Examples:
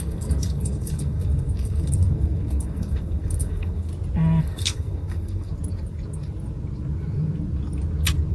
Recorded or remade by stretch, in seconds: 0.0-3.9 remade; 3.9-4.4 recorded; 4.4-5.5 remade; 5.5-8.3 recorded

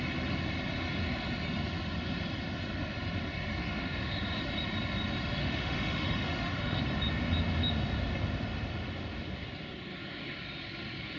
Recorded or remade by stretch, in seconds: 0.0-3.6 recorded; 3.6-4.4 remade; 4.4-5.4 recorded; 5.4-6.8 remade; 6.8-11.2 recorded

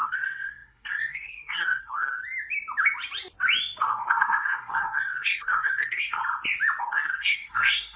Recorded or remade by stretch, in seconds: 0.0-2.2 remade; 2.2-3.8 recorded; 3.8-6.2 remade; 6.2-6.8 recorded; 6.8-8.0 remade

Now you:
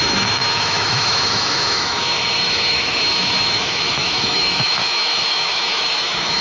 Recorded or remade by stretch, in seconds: 0.0-6.4 remade

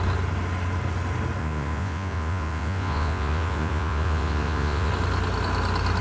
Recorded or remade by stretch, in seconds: 0.0-1.4 recorded; 1.4-4.9 remade; 4.9-6.0 recorded

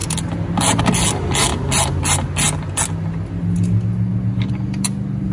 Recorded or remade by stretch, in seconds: 0.0-5.3 recorded

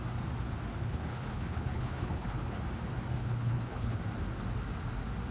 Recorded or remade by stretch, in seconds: 0.0-0.8 recorded; 0.8-2.6 remade; 2.6-3.2 recorded; 3.2-4.0 remade; 4.0-5.3 recorded